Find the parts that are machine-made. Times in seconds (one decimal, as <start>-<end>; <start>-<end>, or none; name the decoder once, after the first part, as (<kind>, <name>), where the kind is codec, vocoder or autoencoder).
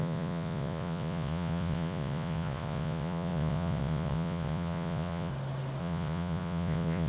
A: 0.0-5.3 (vocoder, Vocos); 5.8-7.1